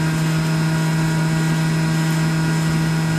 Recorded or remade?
recorded